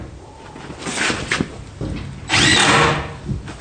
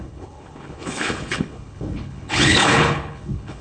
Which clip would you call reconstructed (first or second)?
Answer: second